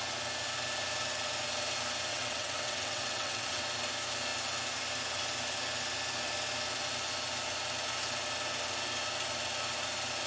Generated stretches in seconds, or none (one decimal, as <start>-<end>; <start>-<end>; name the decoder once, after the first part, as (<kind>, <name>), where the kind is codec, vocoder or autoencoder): 2.1-3.6 (vocoder, WaveNeXt)